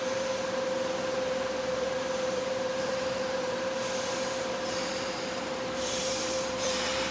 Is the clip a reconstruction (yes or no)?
yes